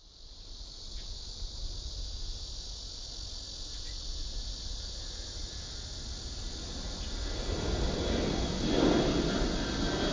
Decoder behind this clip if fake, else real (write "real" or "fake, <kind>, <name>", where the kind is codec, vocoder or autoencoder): real